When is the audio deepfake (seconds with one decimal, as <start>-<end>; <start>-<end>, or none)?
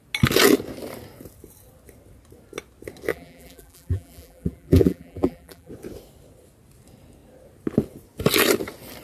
3.1-5.7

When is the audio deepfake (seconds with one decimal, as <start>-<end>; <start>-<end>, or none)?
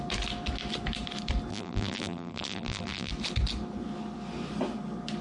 1.5-3.1